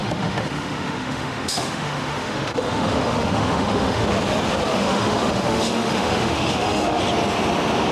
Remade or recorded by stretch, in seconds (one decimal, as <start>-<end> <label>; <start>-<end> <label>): 0.0-4.1 remade; 4.1-4.7 recorded; 4.7-7.0 remade; 7.0-7.9 recorded